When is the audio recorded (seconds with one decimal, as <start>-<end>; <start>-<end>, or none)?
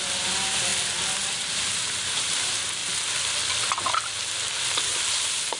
0.7-1.2; 2.8-4.5